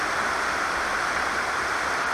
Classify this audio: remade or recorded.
remade